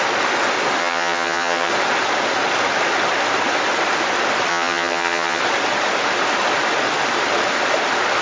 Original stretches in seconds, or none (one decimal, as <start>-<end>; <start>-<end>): 0.0-0.8; 1.7-4.5; 5.4-8.2